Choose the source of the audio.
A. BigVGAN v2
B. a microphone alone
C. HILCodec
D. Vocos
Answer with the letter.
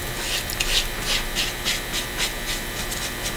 B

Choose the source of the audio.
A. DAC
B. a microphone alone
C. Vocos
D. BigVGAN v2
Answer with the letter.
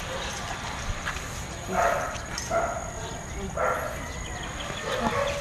B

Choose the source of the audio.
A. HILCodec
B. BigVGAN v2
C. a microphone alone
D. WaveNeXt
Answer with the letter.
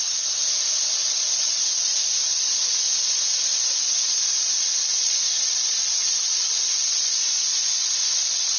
C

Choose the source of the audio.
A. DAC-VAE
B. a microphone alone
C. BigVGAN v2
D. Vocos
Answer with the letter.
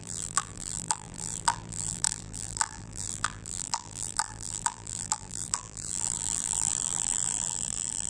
C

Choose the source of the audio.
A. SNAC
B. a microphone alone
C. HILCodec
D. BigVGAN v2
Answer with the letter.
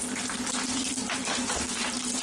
D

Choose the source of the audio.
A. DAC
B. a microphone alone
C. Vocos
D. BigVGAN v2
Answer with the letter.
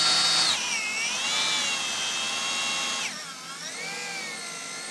B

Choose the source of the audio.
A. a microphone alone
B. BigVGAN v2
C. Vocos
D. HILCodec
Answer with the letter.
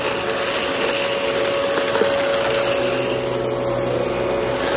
A